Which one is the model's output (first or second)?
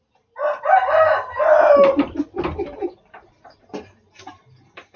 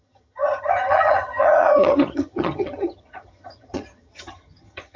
second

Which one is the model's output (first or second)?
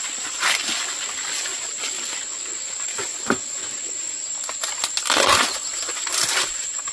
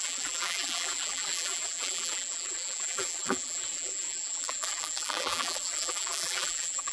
second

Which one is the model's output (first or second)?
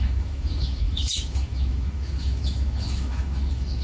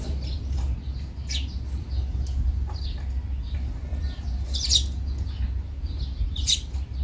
first